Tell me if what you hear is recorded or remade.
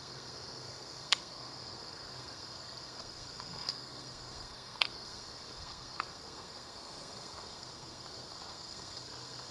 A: remade